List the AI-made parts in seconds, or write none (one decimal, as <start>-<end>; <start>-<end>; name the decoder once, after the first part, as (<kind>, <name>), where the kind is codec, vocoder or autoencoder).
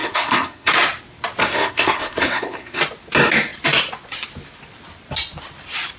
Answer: 0.0-0.7 (codec, SNAC); 1.4-2.8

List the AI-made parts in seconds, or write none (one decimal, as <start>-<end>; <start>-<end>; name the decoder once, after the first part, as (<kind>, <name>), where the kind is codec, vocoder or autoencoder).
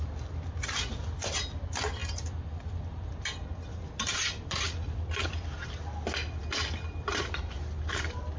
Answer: none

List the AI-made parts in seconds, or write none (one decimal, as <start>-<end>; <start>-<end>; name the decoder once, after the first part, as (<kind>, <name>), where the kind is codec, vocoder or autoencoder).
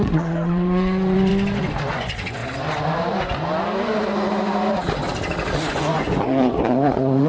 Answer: 0.0-1.3 (vocoder, Vocos); 1.9-2.4; 5.7-7.3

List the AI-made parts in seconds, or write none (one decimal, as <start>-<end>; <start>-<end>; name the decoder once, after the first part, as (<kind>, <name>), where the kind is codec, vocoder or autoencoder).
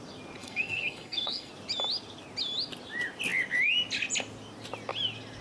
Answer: 0.4-1.5 (codec, SNAC)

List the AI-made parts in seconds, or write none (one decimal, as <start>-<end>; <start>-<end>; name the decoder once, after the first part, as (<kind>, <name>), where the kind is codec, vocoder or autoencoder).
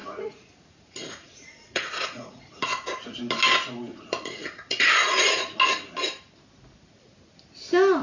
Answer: 0.0-3.2 (vocoder, Vocos); 3.9-5.6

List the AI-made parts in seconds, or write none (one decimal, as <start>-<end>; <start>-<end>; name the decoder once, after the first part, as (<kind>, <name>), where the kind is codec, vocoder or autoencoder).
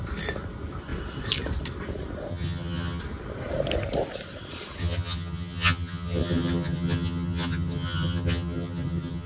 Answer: 2.3-3.0 (vocoder, HiFi-GAN); 4.8-9.3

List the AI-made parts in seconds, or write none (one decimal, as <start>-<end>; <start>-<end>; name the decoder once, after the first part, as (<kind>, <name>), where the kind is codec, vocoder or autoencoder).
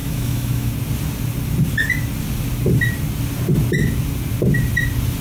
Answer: 0.0-0.7 (autoencoder, DAC-VAE)